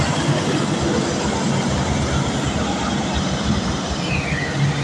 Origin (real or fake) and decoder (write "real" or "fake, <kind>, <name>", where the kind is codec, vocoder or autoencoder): real